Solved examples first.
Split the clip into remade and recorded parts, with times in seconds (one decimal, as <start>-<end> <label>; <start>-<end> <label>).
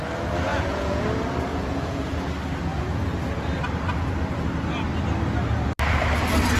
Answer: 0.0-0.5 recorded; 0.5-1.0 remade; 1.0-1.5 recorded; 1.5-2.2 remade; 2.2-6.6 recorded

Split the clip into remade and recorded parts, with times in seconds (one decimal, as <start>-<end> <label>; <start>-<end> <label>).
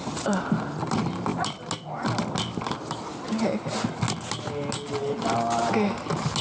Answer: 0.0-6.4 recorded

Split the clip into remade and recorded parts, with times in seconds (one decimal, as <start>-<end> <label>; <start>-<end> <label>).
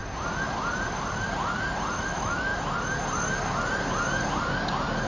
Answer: 0.0-1.9 recorded; 1.9-2.5 remade; 2.5-5.1 recorded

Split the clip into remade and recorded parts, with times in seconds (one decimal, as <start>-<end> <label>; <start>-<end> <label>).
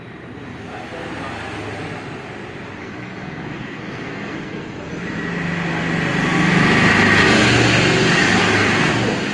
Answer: 0.0-2.8 recorded; 2.8-4.9 remade; 4.9-8.4 recorded; 8.4-8.9 remade; 8.9-9.3 recorded